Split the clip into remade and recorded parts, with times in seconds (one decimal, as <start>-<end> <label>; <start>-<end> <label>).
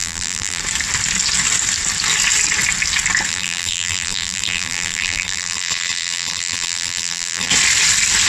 0.0-0.6 remade; 0.6-3.3 recorded; 3.3-7.5 remade; 7.5-8.3 recorded